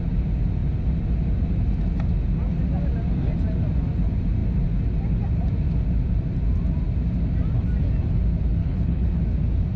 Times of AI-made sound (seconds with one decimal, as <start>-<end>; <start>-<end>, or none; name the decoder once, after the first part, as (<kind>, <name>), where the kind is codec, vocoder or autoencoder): 8.6-9.2 (codec, HILCodec)